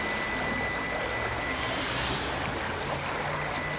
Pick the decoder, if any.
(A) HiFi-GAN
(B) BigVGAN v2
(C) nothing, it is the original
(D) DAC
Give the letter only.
C